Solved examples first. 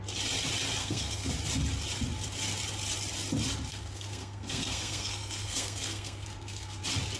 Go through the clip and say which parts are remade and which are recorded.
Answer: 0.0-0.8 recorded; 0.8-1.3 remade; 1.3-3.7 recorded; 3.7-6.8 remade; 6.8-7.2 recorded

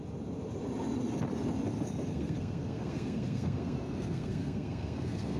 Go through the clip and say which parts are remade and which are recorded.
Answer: 0.0-2.1 recorded; 2.1-5.4 remade

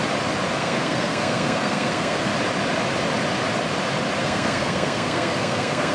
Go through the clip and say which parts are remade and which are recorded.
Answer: 0.0-0.6 recorded; 0.6-2.3 remade; 2.3-4.2 recorded; 4.2-5.9 remade

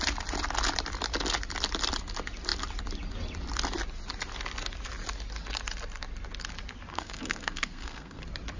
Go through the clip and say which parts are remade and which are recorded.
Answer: 0.0-6.9 recorded; 6.9-8.2 remade; 8.2-8.6 recorded